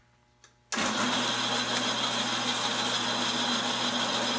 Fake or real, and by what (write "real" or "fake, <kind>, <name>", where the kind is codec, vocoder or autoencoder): real